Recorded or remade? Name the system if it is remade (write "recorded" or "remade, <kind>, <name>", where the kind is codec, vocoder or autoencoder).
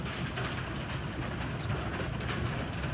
recorded